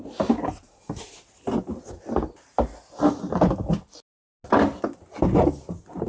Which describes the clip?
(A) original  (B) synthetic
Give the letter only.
A